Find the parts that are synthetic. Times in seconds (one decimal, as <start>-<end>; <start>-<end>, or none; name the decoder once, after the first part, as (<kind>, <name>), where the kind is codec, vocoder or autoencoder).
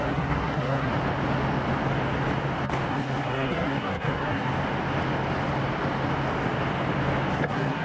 0.0-0.9 (codec, SNAC); 2.9-4.5; 7.3-7.8